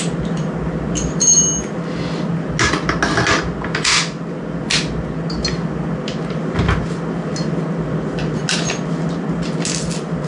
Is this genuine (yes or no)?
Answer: yes